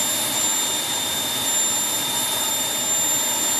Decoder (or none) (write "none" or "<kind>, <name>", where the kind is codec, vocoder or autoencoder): none